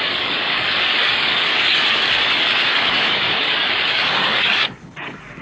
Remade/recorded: remade